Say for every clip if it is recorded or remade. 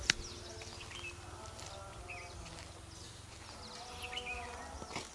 recorded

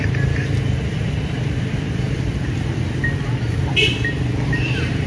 recorded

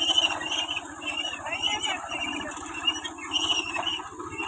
recorded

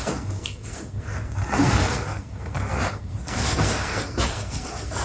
remade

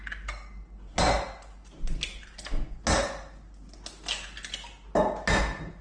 recorded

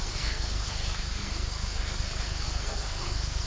remade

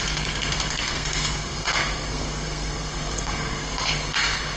remade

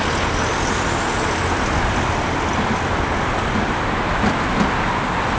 recorded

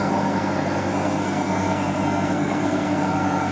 remade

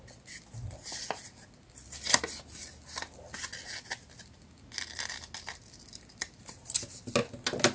recorded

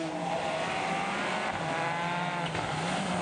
recorded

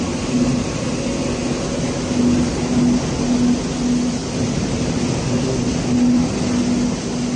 recorded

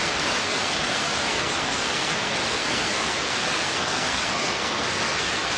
remade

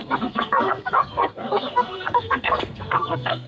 remade